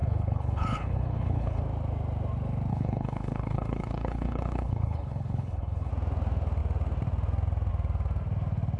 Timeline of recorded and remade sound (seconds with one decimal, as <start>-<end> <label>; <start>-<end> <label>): 0.0-1.6 remade; 1.6-2.7 recorded; 2.7-5.9 remade; 5.9-8.8 recorded